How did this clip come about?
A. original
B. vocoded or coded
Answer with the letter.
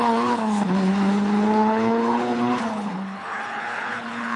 B